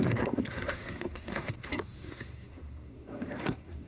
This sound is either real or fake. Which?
fake